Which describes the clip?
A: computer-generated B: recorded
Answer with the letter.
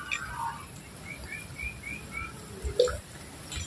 B